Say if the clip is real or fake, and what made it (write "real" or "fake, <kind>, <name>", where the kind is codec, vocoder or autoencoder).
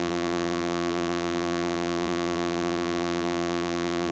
fake, vocoder, BigVGAN v2